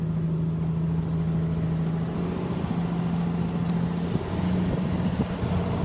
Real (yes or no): yes